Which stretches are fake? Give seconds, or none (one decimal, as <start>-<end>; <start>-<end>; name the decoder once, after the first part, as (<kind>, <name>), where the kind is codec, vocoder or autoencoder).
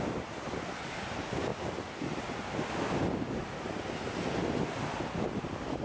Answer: none